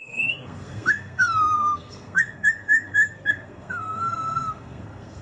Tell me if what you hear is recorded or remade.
remade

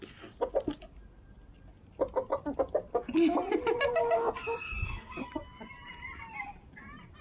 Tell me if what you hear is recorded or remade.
recorded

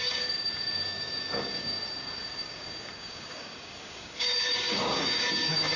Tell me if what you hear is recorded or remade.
remade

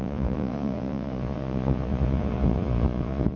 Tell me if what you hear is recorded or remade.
remade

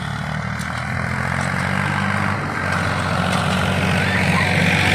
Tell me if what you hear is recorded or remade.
recorded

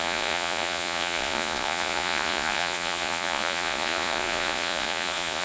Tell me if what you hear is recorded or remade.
remade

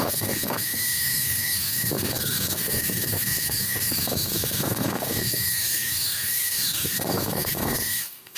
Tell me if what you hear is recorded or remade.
remade